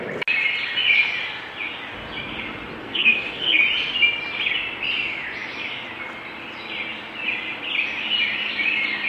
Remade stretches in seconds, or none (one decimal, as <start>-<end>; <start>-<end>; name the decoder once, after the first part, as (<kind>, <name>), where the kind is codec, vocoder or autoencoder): 2.8-3.6 (codec, SNAC)